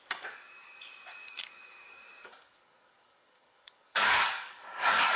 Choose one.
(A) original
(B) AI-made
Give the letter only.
B